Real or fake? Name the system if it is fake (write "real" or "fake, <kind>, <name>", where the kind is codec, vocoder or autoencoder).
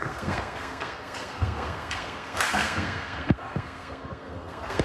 fake, codec, SNAC